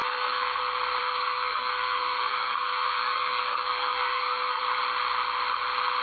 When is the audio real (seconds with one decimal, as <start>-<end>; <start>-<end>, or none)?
0.6-1.0; 4.6-6.0